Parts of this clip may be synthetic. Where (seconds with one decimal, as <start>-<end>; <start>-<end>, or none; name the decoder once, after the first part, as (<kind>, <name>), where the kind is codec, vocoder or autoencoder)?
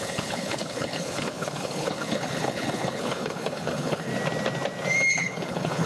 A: 0.0-4.1 (codec, HILCodec); 5.1-5.9